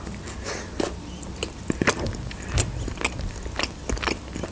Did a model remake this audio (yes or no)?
no